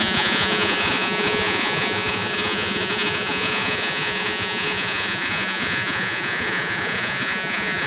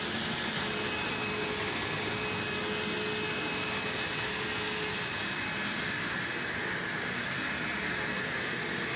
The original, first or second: second